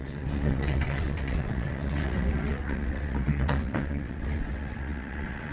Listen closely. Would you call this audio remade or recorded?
remade